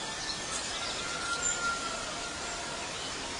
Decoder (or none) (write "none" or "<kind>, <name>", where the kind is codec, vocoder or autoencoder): none